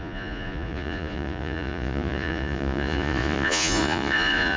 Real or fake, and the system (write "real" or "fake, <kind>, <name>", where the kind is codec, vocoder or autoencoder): fake, vocoder, Vocos